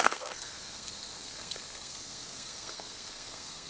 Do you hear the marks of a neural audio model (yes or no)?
yes